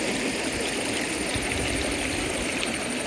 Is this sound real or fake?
real